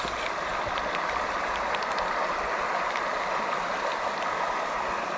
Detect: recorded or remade recorded